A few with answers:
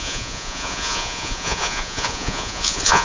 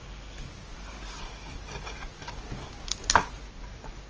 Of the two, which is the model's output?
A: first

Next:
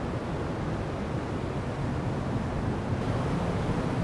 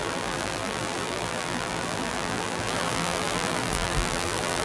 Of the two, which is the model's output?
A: second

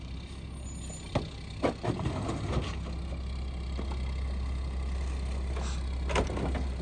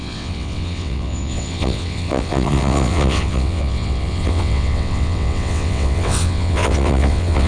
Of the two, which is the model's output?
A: second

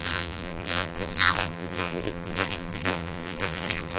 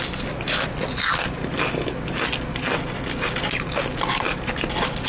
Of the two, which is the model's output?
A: first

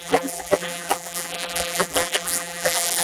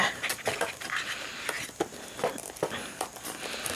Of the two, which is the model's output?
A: first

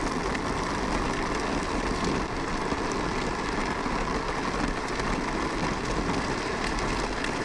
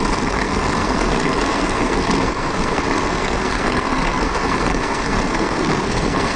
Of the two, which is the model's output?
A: second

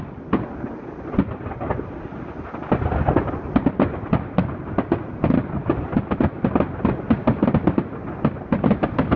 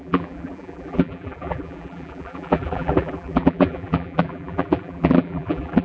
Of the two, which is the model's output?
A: second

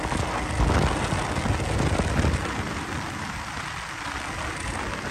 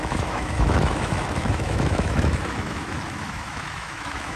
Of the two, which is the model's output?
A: second